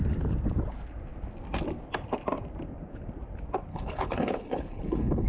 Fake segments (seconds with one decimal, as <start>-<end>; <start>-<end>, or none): 3.7-5.3